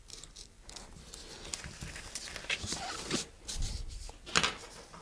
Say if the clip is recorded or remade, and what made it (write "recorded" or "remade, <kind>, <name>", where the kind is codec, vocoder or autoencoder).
recorded